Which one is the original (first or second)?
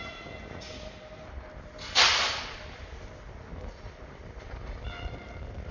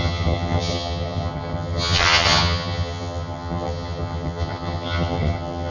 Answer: first